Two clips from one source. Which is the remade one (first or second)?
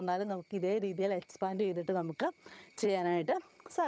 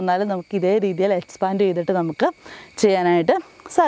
first